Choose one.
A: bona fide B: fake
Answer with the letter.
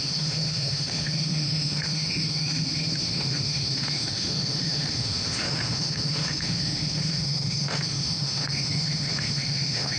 B